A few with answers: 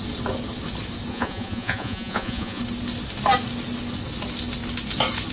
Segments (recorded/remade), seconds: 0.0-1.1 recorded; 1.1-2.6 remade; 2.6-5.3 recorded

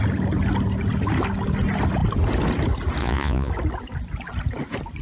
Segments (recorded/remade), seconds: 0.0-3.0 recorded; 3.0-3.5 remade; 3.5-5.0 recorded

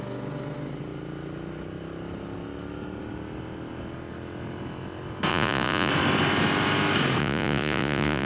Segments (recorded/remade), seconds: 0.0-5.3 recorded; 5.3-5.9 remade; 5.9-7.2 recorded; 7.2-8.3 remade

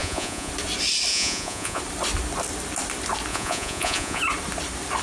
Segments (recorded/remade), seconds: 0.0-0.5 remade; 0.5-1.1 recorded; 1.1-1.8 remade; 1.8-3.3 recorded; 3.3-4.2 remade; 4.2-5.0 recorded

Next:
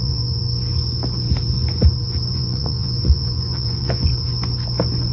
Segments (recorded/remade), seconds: 0.0-0.4 remade; 0.4-2.3 recorded; 2.3-4.1 remade; 4.1-5.1 recorded